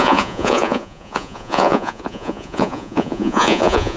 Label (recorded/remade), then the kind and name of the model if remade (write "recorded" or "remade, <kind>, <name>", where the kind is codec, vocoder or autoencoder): remade, vocoder, Vocos